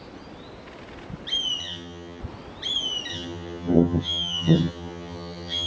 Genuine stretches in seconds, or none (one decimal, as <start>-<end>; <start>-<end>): 0.0-1.6; 2.2-3.1